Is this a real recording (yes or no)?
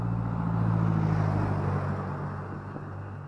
yes